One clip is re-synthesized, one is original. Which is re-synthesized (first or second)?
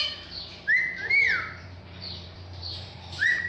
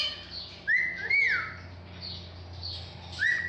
first